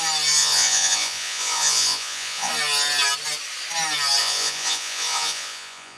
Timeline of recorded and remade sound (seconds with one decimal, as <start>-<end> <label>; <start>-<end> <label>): 0.0-0.4 recorded; 0.4-2.5 remade; 2.5-4.2 recorded; 4.2-6.0 remade